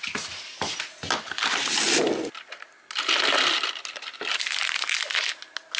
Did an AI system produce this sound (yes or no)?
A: no